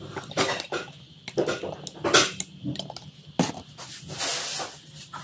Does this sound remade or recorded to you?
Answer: recorded